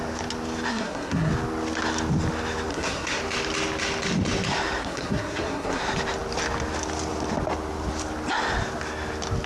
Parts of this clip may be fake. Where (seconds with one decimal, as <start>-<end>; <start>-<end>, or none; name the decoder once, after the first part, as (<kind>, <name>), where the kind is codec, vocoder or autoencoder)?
0.7-1.3 (codec, SNAC); 2.7-3.2; 4.8-5.8